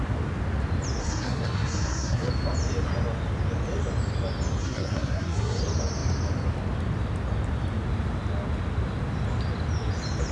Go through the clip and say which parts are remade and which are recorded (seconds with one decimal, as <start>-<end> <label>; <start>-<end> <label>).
0.0-1.0 recorded; 1.0-2.3 remade; 2.3-4.6 recorded; 4.6-5.6 remade; 5.6-10.3 recorded